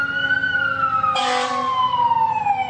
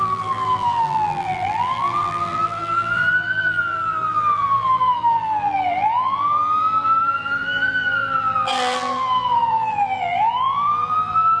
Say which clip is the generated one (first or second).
second